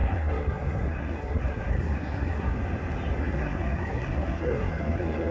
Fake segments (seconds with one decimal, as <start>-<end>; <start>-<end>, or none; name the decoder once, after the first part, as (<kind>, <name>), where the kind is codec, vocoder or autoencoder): 0.0-2.5 (codec, SNAC); 3.2-5.3